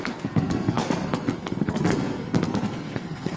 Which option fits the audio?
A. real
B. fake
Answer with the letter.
B